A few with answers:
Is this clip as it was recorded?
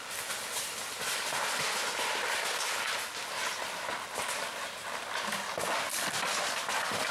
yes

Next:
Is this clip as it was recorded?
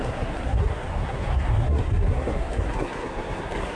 no